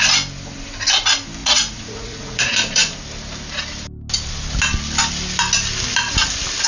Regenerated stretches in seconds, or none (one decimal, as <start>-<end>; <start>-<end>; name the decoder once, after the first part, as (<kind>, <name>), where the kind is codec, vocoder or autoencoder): 1.4-3.0 (vocoder, Vocos)